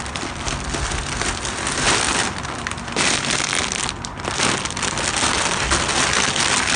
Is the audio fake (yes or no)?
no